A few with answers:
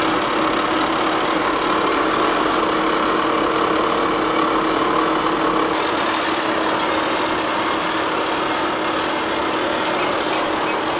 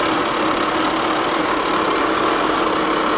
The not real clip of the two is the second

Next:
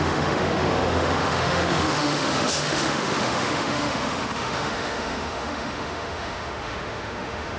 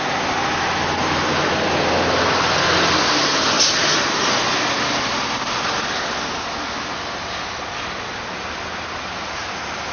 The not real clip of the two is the first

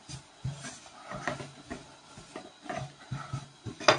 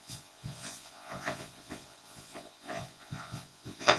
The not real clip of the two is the second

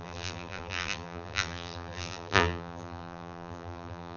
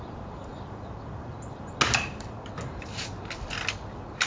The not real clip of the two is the first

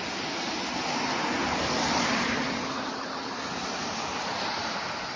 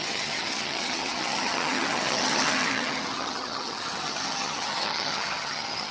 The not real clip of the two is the second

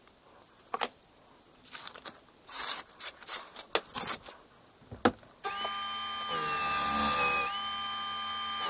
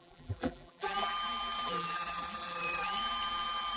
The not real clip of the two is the second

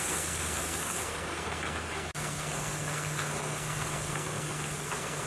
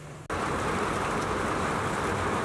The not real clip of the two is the first